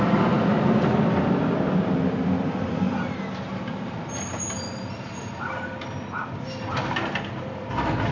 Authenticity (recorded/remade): recorded